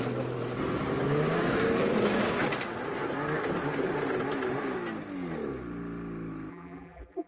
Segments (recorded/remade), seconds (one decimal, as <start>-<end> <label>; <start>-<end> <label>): 0.0-6.5 recorded; 6.5-7.3 remade